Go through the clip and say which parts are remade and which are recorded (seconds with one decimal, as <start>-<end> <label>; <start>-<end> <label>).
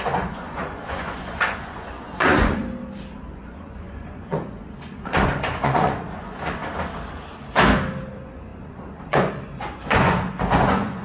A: 0.0-2.6 remade; 2.6-3.3 recorded; 3.3-6.6 remade; 6.6-8.1 recorded; 8.1-11.0 remade